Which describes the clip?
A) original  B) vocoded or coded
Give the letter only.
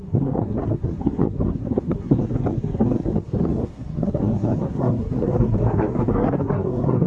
B